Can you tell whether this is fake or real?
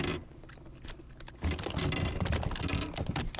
real